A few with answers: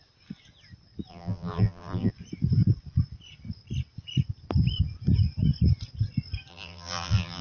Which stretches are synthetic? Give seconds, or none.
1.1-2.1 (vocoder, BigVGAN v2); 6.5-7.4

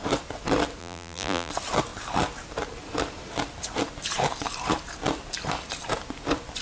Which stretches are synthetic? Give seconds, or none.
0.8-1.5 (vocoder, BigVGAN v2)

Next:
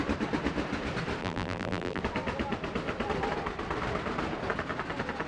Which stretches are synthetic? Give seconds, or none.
1.2-2.0 (vocoder, BigVGAN v2)

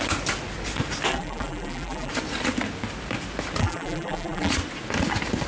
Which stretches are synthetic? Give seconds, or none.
1.1-2.1 (vocoder, BigVGAN v2); 3.6-4.5

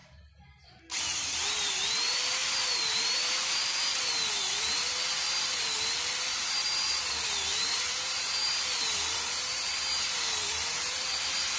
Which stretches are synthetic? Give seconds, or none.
1.0-11.6 (vocoder, BigVGAN v2)

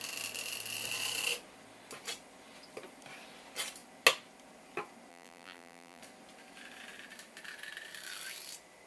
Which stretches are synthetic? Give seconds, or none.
5.1-6.0 (vocoder, BigVGAN v2)

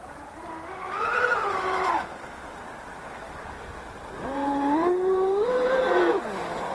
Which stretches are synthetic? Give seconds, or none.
none

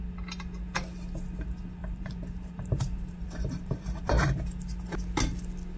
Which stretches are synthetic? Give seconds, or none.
1.8-4.0 (vocoder, BigVGAN v2)